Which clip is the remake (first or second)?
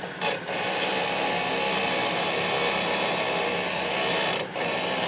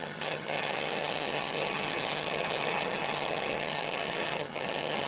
second